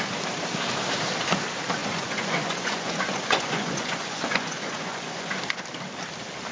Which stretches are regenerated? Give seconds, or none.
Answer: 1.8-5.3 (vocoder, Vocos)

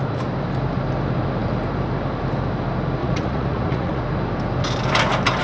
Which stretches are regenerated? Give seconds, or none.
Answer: 3.0-4.0 (vocoder, Vocos)

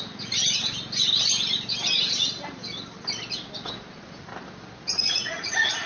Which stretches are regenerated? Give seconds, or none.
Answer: 0.0-0.4 (vocoder, Vocos); 3.9-4.3; 5.0-5.9

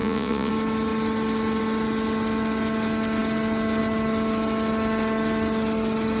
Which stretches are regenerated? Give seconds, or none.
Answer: 0.0-0.5 (vocoder, Vocos)